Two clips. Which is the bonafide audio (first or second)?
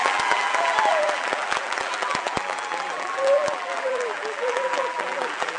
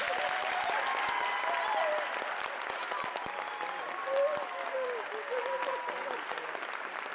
second